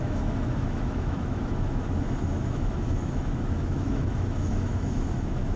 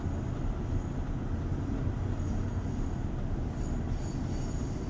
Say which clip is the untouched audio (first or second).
second